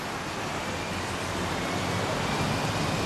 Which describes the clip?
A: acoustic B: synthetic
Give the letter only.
A